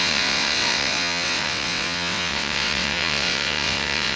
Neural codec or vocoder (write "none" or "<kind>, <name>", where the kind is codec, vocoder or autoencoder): vocoder, WaveNeXt